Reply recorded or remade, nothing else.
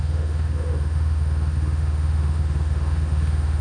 remade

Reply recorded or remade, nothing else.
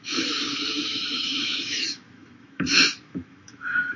remade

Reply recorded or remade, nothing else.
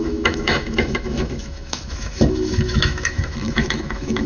remade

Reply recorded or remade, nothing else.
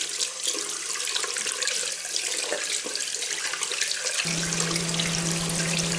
recorded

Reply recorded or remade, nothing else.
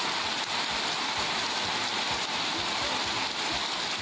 recorded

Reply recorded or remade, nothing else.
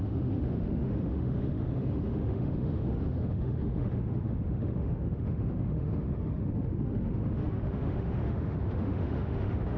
remade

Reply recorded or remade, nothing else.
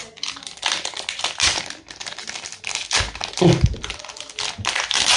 recorded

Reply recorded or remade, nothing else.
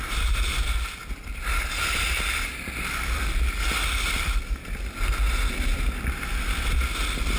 recorded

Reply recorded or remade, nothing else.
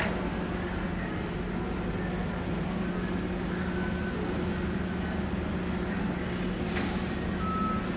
recorded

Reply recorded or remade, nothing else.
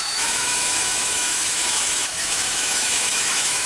remade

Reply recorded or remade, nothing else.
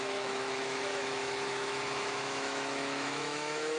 remade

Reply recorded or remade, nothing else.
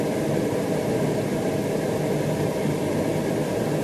recorded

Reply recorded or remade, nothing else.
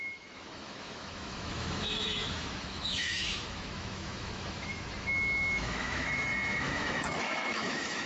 remade